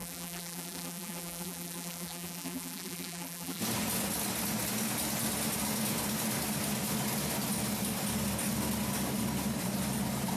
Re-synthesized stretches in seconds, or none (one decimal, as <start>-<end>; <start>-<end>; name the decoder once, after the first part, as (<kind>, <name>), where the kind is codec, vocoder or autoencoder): 0.0-3.6 (vocoder, BigVGAN v2)